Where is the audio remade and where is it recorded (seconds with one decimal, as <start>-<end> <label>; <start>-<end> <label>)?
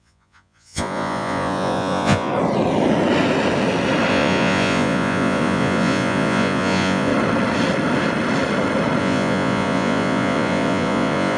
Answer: 0.0-2.3 remade; 2.3-4.1 recorded; 4.1-7.1 remade; 7.1-9.0 recorded; 9.0-11.4 remade